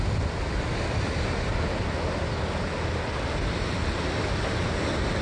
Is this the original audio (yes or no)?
yes